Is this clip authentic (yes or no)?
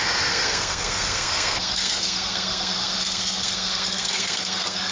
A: no